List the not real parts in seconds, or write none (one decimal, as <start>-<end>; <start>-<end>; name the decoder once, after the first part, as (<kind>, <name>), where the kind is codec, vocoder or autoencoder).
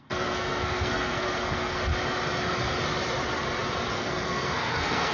0.0-1.9 (codec, SNAC); 3.9-5.1